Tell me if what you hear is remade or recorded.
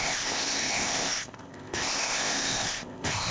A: remade